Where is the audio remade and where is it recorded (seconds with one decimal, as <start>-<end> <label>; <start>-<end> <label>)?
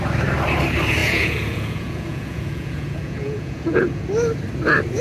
0.0-1.0 recorded; 1.0-4.0 remade; 4.0-5.0 recorded